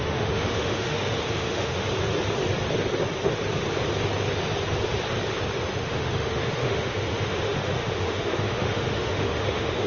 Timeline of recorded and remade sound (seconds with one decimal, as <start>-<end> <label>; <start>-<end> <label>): 0.0-1.8 remade; 1.8-5.6 recorded; 5.6-9.9 remade